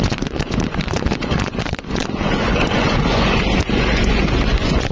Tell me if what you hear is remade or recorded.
remade